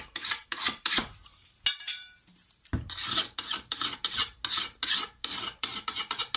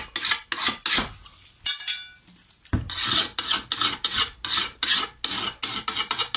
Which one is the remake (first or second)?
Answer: first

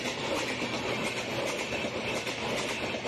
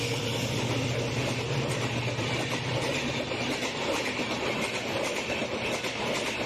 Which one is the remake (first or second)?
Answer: second